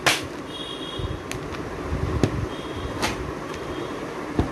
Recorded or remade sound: recorded